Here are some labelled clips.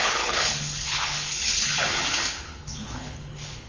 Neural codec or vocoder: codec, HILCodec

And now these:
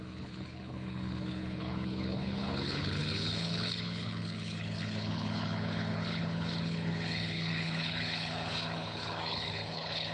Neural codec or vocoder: codec, HILCodec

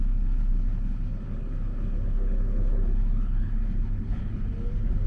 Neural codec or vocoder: codec, HILCodec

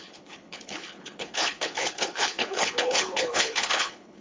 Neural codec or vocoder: codec, HILCodec